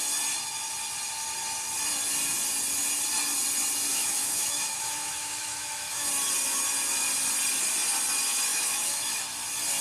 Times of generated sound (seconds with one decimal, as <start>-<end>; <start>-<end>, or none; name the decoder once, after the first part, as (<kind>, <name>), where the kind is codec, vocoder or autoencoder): 3.9-6.1 (autoencoder, DAC-VAE); 8.5-9.2